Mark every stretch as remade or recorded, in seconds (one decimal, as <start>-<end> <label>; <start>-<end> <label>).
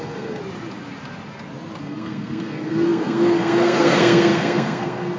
0.0-0.4 remade; 0.4-1.8 recorded; 1.8-5.2 remade